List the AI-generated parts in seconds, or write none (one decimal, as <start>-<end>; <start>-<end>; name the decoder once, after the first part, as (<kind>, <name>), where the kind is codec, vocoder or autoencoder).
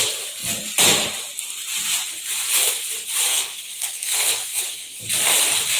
3.3-5.0 (codec, SNAC)